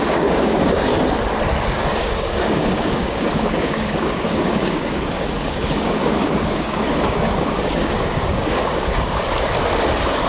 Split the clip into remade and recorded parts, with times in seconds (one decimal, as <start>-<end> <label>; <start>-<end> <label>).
0.0-0.9 remade; 0.9-1.7 recorded; 1.7-9.2 remade; 9.2-10.3 recorded